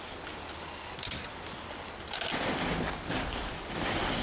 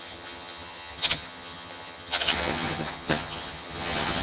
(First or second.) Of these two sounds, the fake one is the second